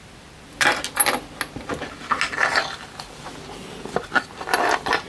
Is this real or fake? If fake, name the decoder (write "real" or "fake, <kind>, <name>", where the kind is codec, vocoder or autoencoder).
real